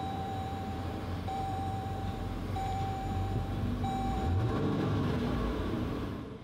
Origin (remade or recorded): remade